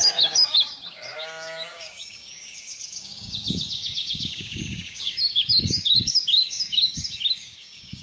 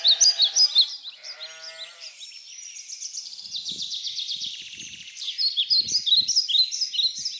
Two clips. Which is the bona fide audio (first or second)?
second